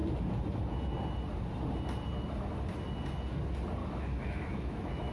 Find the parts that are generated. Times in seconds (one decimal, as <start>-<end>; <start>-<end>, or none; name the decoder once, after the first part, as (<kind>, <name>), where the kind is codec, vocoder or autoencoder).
3.8-5.1 (autoencoder, DAC-VAE)